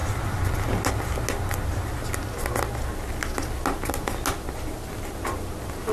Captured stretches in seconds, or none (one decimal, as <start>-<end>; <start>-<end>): 0.0-5.9